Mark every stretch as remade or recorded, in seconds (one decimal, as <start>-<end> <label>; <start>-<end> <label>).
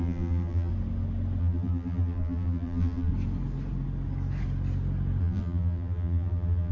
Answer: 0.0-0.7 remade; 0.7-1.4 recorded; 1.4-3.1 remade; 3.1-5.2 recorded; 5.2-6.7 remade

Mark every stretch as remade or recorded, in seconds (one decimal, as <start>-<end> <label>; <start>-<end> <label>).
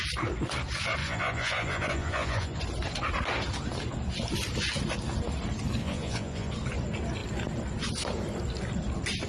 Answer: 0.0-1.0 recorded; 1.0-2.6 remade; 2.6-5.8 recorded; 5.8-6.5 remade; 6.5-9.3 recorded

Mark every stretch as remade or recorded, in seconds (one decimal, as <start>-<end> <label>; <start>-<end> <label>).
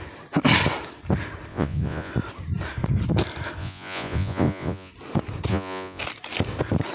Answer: 0.0-1.5 recorded; 1.5-2.1 remade; 2.1-3.6 recorded; 3.6-4.9 remade; 4.9-5.5 recorded; 5.5-6.0 remade; 6.0-6.9 recorded